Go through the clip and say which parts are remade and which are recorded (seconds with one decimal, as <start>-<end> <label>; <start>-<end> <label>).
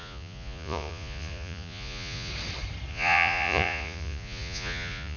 0.0-2.3 remade; 2.3-2.9 recorded; 2.9-5.2 remade